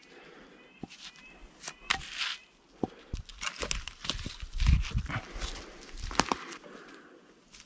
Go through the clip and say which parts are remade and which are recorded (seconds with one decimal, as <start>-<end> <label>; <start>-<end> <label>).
0.0-7.7 recorded